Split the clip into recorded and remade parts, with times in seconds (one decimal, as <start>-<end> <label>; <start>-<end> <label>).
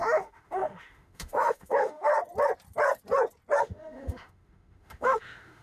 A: 0.0-2.1 remade; 2.1-3.6 recorded; 3.6-5.6 remade